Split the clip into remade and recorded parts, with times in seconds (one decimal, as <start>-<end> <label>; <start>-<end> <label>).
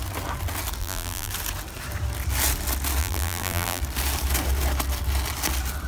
0.0-0.8 recorded; 0.8-1.3 remade; 1.3-3.0 recorded; 3.0-3.8 remade; 3.8-5.9 recorded